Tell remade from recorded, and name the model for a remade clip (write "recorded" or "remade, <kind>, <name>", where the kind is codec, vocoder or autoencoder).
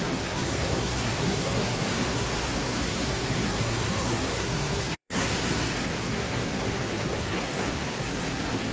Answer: remade, codec, SNAC